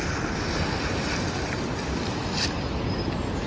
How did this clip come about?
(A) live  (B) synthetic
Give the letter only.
A